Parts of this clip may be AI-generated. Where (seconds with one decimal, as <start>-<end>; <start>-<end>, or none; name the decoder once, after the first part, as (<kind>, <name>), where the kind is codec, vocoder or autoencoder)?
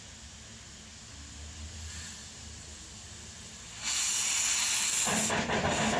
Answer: none